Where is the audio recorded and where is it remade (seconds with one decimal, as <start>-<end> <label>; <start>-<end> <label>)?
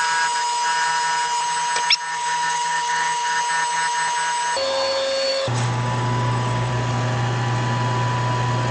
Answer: 0.0-2.1 recorded; 2.1-3.4 remade; 3.4-5.3 recorded; 5.3-6.7 remade; 6.7-8.7 recorded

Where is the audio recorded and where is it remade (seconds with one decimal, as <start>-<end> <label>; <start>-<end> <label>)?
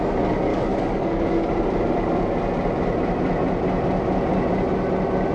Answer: 0.0-0.5 recorded; 0.5-1.5 remade; 1.5-5.3 recorded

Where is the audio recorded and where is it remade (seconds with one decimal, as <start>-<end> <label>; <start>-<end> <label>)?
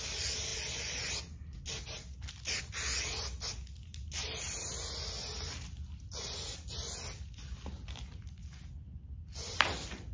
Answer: 0.0-10.1 recorded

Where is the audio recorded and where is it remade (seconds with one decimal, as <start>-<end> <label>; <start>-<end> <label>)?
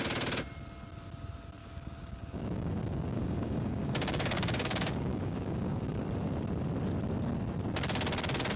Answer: 0.0-1.6 recorded; 1.6-6.0 remade; 6.0-8.6 recorded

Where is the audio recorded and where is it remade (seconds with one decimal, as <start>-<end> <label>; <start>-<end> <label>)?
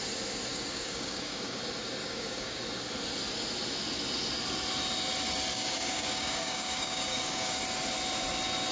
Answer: 0.0-0.5 recorded; 0.5-1.6 remade; 1.6-2.0 recorded; 2.0-2.6 remade; 2.6-5.5 recorded; 5.5-7.6 remade; 7.6-8.7 recorded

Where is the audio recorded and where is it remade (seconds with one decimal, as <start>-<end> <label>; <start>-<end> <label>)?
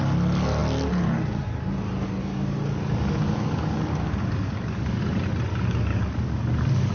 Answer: 0.0-2.2 recorded; 2.2-5.0 remade; 5.0-5.5 recorded; 5.5-6.9 remade